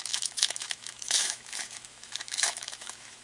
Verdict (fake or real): fake